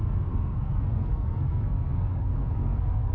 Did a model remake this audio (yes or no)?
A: yes